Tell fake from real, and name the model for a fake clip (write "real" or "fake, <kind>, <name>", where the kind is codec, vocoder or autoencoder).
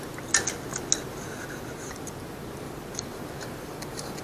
real